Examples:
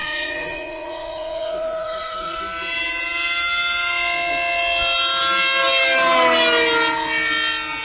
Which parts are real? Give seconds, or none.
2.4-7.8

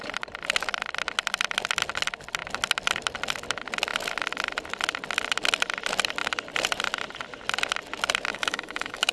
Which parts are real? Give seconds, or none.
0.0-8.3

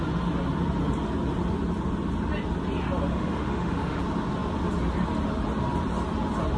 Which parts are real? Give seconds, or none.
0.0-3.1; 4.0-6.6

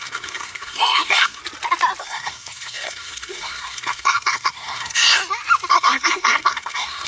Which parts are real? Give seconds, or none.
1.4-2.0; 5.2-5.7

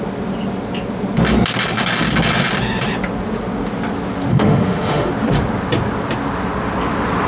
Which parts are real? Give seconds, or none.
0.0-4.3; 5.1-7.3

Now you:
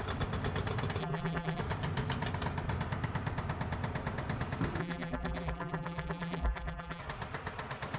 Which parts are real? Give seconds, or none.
0.0-1.0; 1.6-4.8; 7.0-8.0

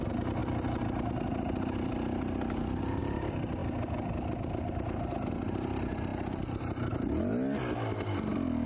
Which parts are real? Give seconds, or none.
0.0-8.7